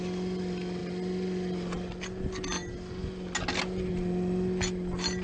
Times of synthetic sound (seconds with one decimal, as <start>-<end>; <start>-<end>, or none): none